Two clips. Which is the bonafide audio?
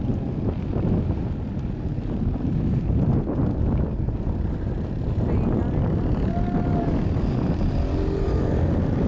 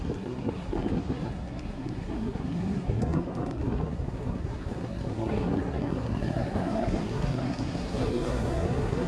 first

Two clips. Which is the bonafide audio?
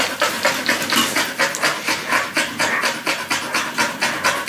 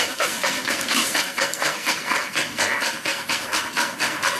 first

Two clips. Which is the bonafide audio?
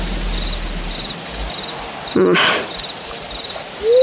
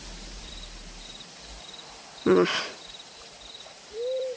first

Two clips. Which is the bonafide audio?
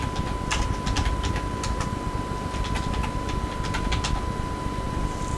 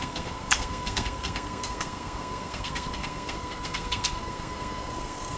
first